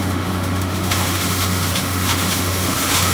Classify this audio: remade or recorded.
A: remade